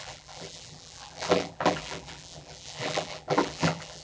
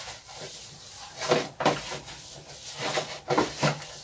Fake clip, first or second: first